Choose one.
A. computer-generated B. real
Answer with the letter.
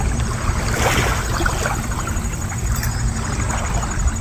B